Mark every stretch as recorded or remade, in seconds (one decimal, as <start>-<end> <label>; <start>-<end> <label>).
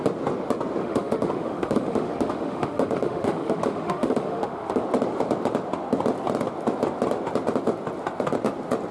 0.0-0.8 recorded; 0.8-4.8 remade; 4.8-8.9 recorded